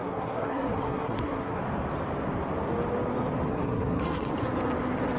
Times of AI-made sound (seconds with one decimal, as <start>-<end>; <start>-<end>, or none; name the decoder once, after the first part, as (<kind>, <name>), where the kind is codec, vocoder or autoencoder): 0.0-1.6 (codec, SNAC); 3.5-4.3